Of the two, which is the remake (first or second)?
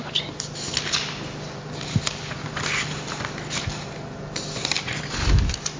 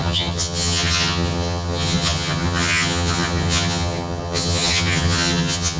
second